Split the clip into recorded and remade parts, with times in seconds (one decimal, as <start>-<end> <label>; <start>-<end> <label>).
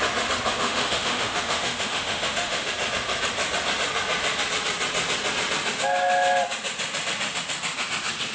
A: 0.0-0.6 recorded; 0.6-2.7 remade; 2.7-8.3 recorded